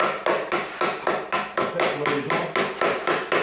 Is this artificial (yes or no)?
no